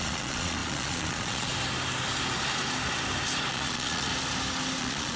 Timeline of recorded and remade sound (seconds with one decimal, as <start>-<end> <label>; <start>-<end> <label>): 0.0-1.5 remade; 1.5-3.5 recorded; 3.5-4.1 remade; 4.1-4.8 recorded; 4.8-5.2 remade